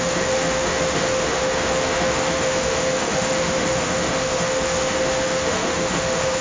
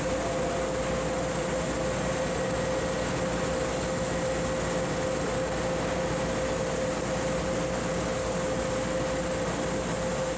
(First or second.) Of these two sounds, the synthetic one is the first